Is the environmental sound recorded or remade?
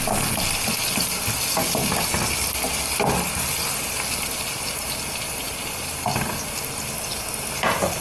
recorded